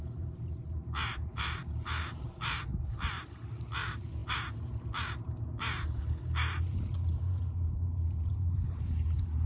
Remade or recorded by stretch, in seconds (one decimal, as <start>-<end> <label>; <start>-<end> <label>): 0.0-9.5 remade